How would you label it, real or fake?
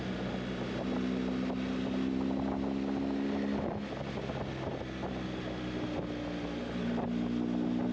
real